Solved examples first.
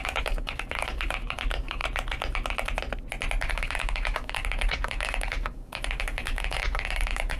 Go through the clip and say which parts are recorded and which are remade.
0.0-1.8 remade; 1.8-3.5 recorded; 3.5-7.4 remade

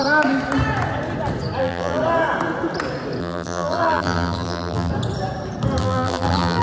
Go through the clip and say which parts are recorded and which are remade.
0.0-1.6 recorded; 1.6-2.0 remade; 2.0-3.2 recorded; 3.2-4.9 remade; 4.9-5.8 recorded; 5.8-6.6 remade